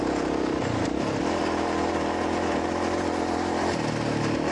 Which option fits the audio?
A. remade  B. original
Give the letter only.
B